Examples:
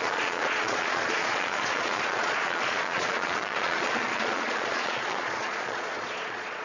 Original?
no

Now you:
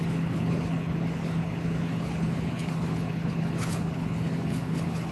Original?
no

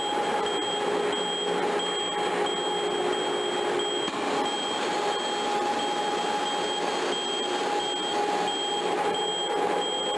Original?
yes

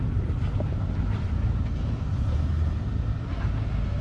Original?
yes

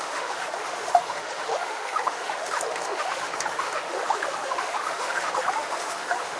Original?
no